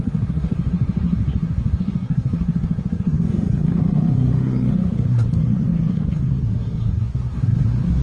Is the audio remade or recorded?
remade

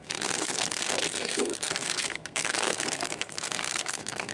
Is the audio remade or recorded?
remade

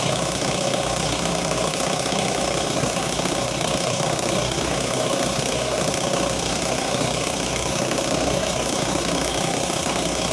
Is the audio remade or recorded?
remade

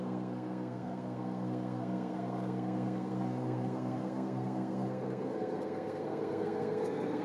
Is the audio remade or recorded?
remade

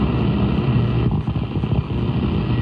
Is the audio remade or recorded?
recorded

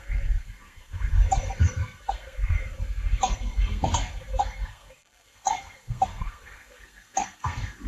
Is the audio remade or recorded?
remade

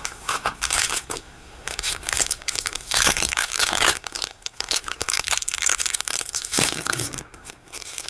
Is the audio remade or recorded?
remade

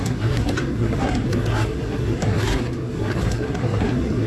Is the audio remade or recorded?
remade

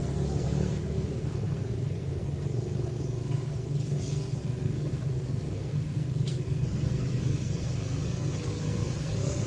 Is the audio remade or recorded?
remade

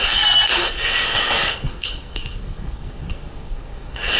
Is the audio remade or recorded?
remade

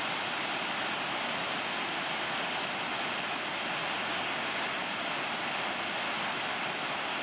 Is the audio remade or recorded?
recorded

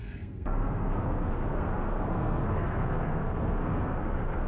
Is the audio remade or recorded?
remade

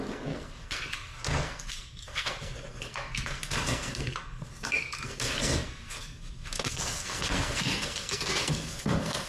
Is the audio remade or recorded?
remade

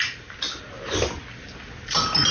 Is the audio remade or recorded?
recorded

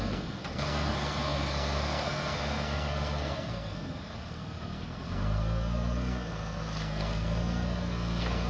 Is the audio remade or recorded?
remade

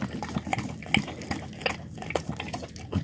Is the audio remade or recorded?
recorded